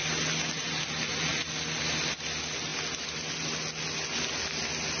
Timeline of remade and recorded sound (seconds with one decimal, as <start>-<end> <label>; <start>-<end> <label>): 0.0-5.0 recorded